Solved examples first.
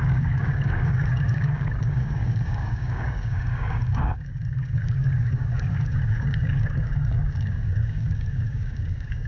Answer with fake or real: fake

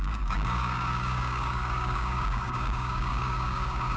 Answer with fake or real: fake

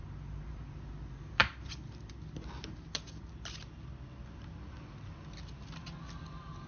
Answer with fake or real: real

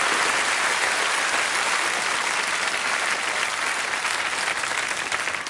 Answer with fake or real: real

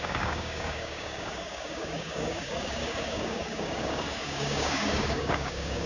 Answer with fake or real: fake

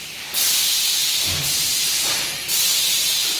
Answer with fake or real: real